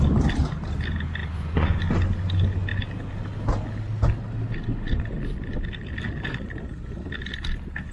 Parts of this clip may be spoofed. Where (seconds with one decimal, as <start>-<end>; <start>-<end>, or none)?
1.2-1.8